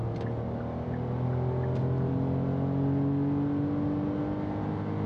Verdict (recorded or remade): recorded